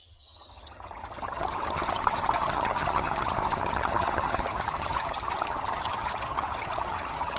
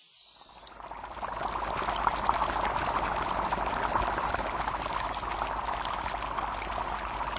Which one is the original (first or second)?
second